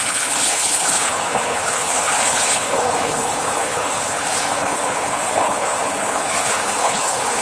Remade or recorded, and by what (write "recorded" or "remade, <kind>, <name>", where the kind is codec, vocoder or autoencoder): remade, codec, HILCodec